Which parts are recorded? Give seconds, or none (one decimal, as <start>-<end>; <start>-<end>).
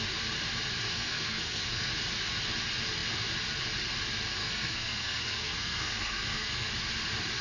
0.0-0.9; 1.9-4.4; 6.7-7.4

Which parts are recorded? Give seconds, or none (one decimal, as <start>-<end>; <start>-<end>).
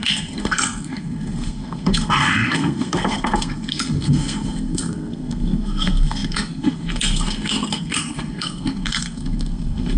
none